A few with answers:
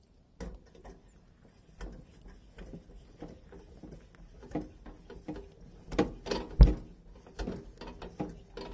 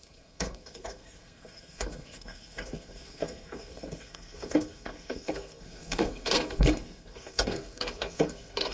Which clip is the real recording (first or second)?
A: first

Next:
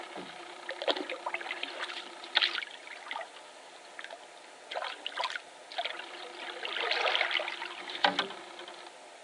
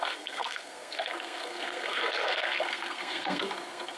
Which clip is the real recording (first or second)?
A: first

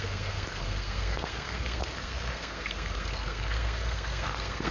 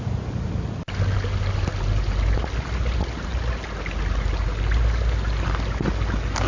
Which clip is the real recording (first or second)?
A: second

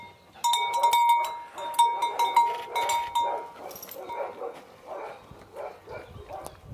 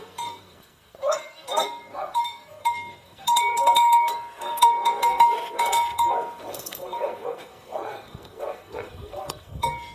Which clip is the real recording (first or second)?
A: first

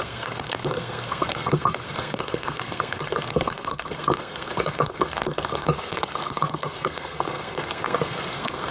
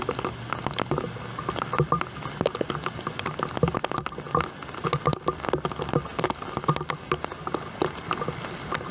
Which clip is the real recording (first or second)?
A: second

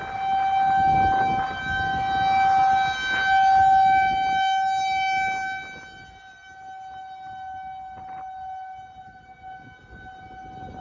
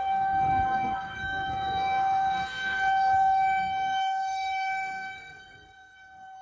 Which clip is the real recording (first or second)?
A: first